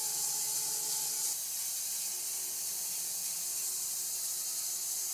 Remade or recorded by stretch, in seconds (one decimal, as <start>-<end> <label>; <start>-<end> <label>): 0.0-5.1 recorded